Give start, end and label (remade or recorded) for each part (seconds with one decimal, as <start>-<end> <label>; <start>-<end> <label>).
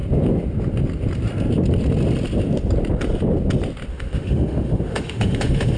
0.0-3.9 recorded; 3.9-5.8 remade